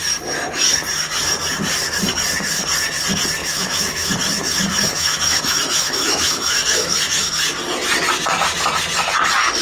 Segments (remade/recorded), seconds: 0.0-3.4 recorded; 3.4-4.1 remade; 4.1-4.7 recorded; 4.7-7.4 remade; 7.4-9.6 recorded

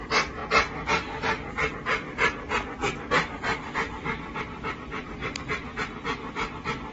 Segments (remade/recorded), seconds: 0.0-6.9 recorded

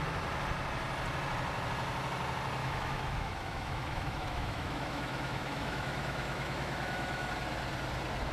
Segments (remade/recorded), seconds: 0.0-2.6 recorded; 2.6-7.3 remade; 7.3-8.3 recorded

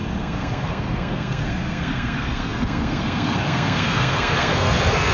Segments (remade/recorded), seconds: 0.0-5.1 remade

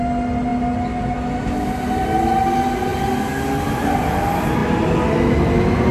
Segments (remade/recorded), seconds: 0.0-5.9 recorded

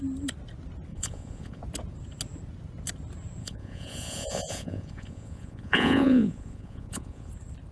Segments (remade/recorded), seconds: 0.0-0.9 recorded; 0.9-1.6 remade; 1.6-3.4 recorded; 3.4-7.3 remade; 7.3-7.7 recorded

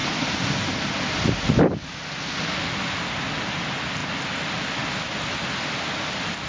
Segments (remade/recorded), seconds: 0.0-6.5 recorded